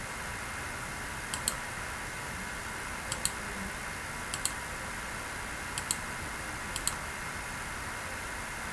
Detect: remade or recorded recorded